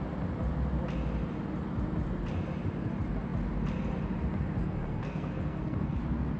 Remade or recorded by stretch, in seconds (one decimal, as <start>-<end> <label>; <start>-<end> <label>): 0.0-4.6 recorded; 4.6-6.0 remade; 6.0-6.4 recorded